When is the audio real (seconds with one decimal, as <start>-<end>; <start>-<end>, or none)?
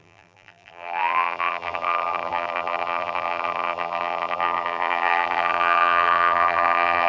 none